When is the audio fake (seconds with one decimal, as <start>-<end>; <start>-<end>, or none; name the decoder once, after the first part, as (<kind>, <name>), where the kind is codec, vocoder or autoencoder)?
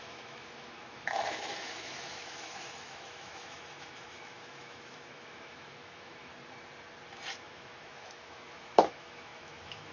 0.0-6.3 (autoencoder, DAC-VAE); 7.4-9.9